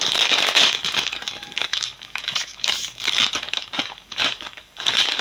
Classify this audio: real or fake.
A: fake